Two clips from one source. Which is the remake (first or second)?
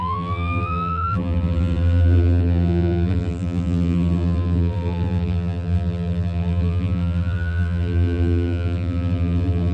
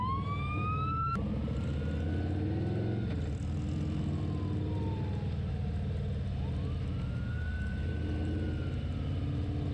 first